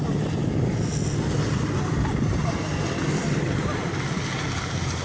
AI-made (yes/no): no